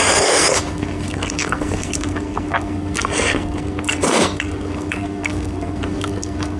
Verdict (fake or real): fake